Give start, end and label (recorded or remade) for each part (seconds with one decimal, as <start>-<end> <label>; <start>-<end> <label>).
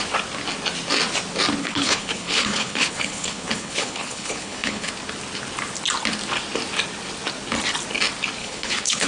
0.0-1.6 recorded; 1.6-4.9 remade; 4.9-8.4 recorded; 8.4-9.1 remade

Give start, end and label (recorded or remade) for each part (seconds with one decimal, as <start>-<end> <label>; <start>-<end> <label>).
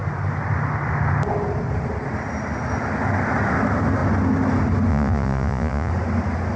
0.0-4.9 recorded; 4.9-5.9 remade; 5.9-6.6 recorded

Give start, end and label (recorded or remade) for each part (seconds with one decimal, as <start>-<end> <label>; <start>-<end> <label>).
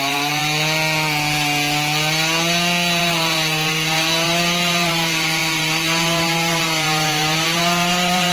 0.0-0.4 remade; 0.4-3.0 recorded; 3.0-8.3 remade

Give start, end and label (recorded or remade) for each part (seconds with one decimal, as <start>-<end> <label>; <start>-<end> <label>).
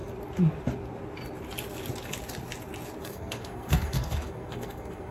0.0-3.0 recorded; 3.0-5.1 remade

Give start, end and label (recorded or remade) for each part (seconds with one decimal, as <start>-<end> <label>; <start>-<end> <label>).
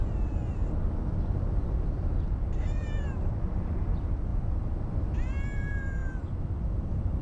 0.0-0.6 remade; 0.6-2.4 recorded; 2.4-4.3 remade; 4.3-5.3 recorded; 5.3-6.0 remade; 6.0-6.5 recorded; 6.5-7.2 remade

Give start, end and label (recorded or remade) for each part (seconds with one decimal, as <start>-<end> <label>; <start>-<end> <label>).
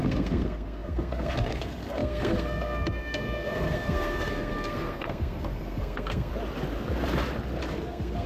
0.0-6.3 remade; 6.3-7.7 recorded; 7.7-8.3 remade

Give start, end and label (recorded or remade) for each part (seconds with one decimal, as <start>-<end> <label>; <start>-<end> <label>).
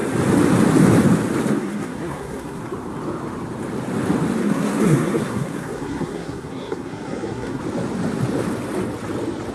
0.0-1.5 recorded; 1.5-2.6 remade; 2.6-4.4 recorded; 4.4-7.6 remade; 7.6-9.5 recorded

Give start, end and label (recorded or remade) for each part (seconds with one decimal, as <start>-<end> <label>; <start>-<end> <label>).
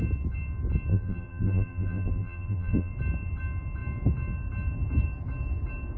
0.0-0.9 recorded; 0.9-2.9 remade; 2.9-6.0 recorded